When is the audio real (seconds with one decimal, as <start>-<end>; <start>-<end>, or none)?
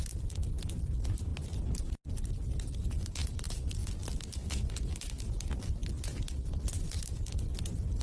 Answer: 0.0-8.0